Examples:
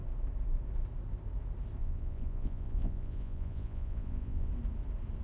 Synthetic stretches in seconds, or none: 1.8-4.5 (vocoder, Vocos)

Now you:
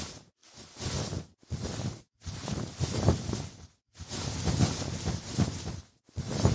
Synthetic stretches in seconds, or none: none

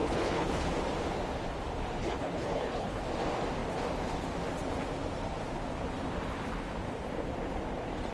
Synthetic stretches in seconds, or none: 0.0-0.5 (codec, HILCodec); 2.0-3.0

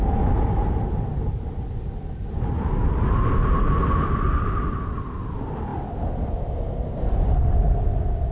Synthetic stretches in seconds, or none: none